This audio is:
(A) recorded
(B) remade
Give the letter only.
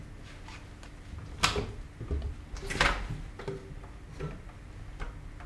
A